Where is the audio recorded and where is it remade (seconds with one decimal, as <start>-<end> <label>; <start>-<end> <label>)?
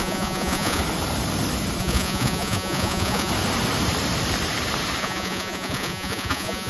0.0-0.8 remade; 0.8-1.8 recorded; 1.8-3.3 remade; 3.3-5.0 recorded; 5.0-6.7 remade